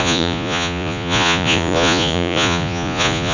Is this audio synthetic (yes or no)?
yes